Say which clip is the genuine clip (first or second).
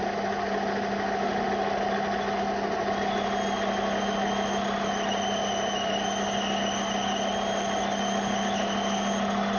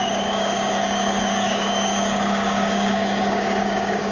first